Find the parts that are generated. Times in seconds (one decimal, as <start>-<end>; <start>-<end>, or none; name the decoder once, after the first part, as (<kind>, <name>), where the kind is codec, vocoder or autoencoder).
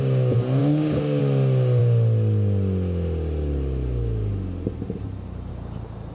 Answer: 0.6-1.2 (codec, DAC)